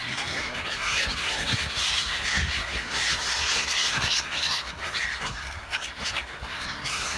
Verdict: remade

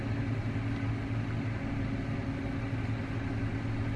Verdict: recorded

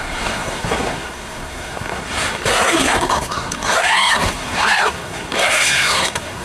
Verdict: remade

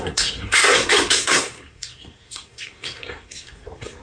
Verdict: remade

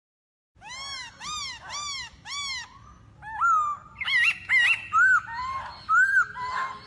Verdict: recorded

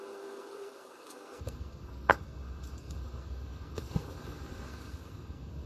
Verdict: remade